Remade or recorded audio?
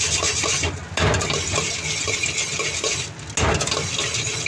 recorded